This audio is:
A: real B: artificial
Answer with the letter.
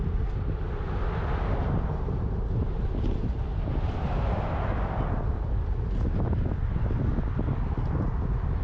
A